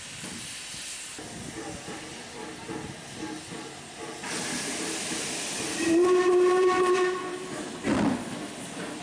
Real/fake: real